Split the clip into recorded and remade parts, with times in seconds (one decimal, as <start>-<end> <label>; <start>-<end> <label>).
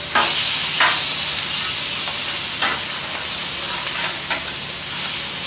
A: 0.0-5.5 recorded